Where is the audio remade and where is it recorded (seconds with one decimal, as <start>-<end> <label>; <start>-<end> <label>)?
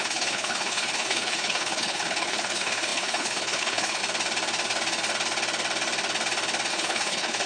0.0-4.0 remade; 4.0-6.7 recorded; 6.7-7.5 remade